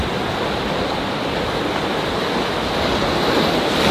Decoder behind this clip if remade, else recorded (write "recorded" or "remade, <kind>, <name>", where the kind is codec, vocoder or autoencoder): recorded